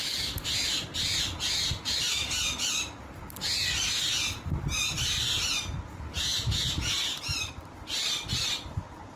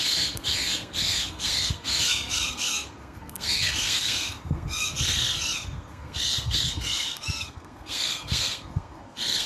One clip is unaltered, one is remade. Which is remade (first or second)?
second